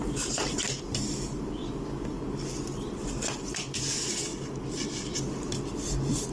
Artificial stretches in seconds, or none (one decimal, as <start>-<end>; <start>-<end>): none